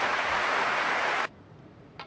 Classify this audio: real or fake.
fake